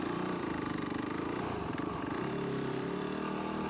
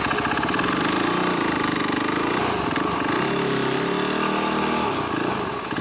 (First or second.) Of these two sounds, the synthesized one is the first